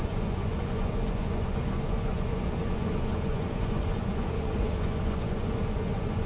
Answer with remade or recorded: remade